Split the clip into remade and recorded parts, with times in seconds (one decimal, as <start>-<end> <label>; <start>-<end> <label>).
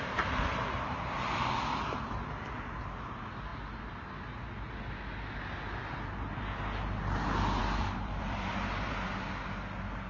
0.0-7.6 recorded; 7.6-8.9 remade; 8.9-10.1 recorded